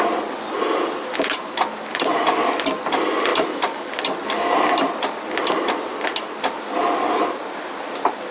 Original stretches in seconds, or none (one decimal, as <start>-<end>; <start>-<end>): 0.0-8.3